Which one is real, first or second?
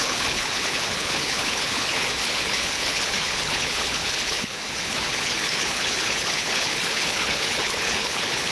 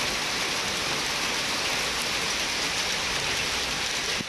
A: second